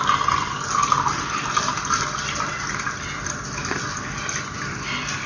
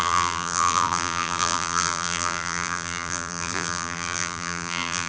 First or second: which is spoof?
second